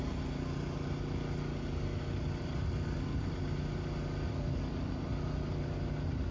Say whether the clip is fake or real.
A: real